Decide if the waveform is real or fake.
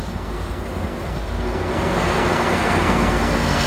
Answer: fake